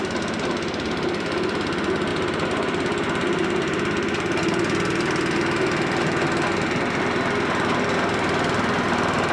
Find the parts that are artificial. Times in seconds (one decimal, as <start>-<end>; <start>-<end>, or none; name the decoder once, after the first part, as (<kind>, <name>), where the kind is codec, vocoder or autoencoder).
none